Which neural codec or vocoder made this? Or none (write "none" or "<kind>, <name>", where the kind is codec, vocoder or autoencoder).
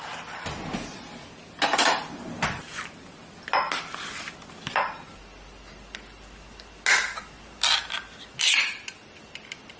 none